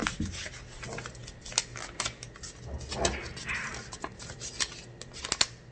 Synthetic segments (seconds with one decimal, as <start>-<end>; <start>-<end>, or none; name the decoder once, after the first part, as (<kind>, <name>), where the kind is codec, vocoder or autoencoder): 3.4-4.5 (vocoder, BigVGAN v2)